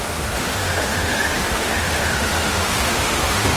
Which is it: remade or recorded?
remade